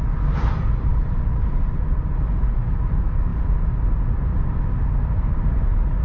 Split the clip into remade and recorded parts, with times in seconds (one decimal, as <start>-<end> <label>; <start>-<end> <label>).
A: 0.0-6.0 recorded